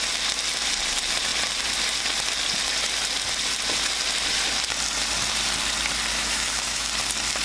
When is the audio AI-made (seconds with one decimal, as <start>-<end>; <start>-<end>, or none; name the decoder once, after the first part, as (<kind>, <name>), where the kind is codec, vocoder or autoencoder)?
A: 6.1-6.9 (autoencoder, DAC-VAE)